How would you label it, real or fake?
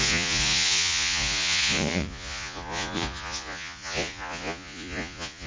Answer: fake